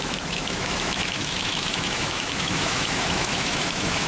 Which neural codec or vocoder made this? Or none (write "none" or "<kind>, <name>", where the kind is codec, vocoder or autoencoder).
autoencoder, DAC-VAE